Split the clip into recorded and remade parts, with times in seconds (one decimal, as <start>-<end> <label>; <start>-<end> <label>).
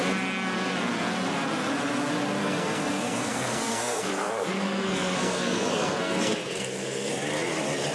0.0-2.4 recorded; 2.4-7.1 remade; 7.1-7.9 recorded